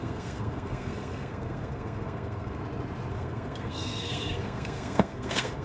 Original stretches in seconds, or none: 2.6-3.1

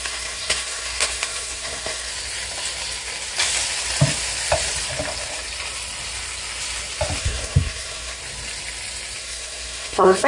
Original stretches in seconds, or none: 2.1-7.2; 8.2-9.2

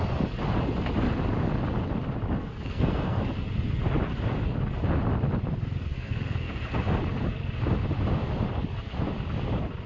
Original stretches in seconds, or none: 0.0-2.4; 3.2-5.8; 6.7-9.9

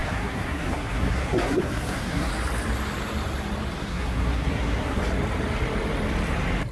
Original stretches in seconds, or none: 2.3-3.8; 5.0-6.7